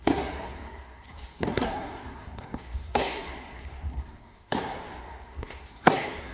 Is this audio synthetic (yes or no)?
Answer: yes